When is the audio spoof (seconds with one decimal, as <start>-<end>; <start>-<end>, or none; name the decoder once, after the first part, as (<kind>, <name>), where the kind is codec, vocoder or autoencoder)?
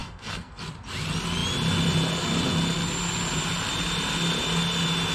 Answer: 0.0-0.6 (codec, SNAC)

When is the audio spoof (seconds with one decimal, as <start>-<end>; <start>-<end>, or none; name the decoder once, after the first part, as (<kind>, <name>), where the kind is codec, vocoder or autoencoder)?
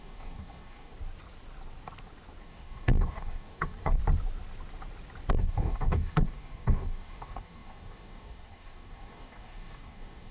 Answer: 0.0-0.9 (codec, DAC); 2.4-4.0; 5.3-10.3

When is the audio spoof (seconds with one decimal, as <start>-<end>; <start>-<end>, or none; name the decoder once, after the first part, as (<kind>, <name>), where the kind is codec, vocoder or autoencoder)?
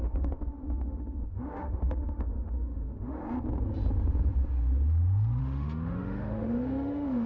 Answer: 0.0-3.2 (autoencoder, DAC-VAE); 5.4-7.3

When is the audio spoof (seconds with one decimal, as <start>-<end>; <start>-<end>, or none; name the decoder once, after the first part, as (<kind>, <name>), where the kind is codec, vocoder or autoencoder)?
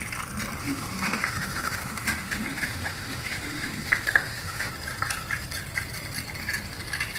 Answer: 0.6-4.7 (autoencoder, DAC-VAE)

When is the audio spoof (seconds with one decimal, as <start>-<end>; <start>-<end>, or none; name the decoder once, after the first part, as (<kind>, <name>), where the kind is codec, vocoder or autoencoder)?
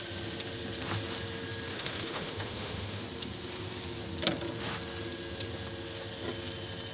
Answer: 1.7-3.0 (autoencoder, DAC-VAE)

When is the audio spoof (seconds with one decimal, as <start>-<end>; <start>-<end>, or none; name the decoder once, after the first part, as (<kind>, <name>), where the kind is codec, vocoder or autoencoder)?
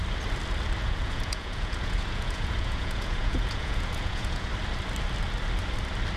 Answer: 0.8-4.5 (vocoder, Vocos)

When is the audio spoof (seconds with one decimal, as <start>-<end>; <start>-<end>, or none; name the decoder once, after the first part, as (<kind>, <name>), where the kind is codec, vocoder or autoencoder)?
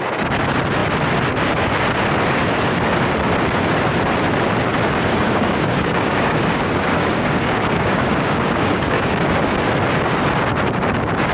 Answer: 5.1-9.6 (codec, DAC)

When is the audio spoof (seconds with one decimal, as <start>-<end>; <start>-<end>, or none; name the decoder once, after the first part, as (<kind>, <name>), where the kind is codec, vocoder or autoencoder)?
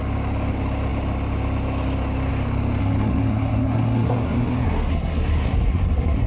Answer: 2.8-6.3 (codec, SNAC)